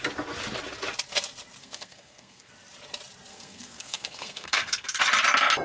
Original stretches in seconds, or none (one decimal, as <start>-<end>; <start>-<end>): 0.0-1.6; 2.5-3.3; 5.0-5.6